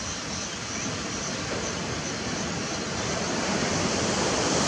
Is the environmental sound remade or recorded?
recorded